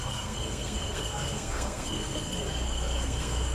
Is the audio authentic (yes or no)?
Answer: no